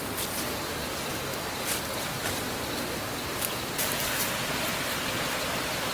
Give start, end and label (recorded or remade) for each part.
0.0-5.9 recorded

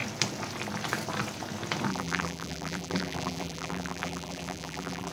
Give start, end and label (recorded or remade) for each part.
0.0-1.9 recorded; 1.9-5.1 remade

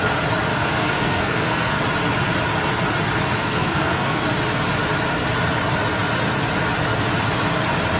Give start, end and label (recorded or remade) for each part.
0.0-0.5 recorded; 0.5-1.8 remade; 1.8-3.4 recorded; 3.4-4.2 remade; 4.2-8.0 recorded